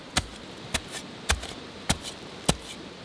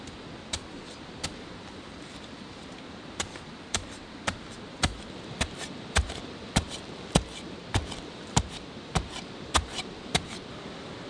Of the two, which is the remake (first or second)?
second